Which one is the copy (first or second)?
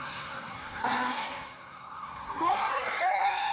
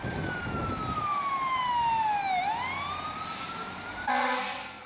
first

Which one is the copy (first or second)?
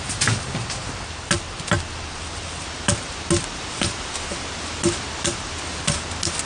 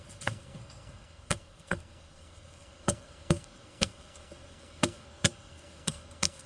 second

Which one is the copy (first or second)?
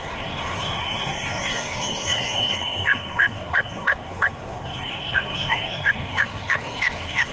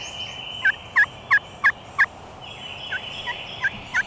first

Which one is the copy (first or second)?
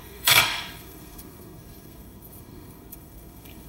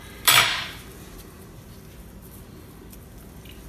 first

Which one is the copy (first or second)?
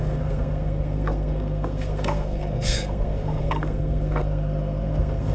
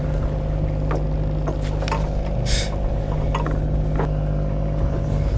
first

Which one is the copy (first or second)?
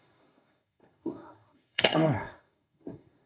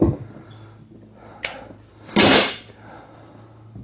first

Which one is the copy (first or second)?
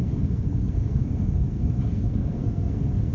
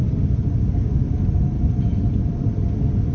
first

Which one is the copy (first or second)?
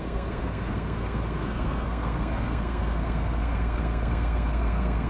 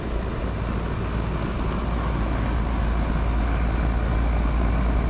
first